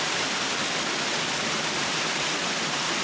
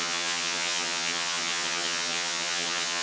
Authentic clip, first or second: first